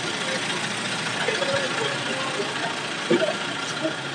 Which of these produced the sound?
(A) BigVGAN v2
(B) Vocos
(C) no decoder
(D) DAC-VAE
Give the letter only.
C